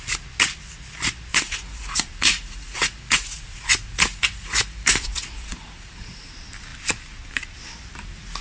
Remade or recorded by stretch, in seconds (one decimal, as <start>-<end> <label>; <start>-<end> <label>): 0.0-1.3 recorded; 1.3-6.3 remade; 6.3-8.4 recorded